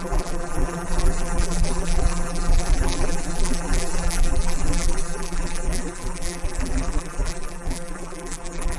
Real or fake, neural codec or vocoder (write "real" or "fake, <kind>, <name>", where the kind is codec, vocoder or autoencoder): fake, vocoder, BigVGAN v2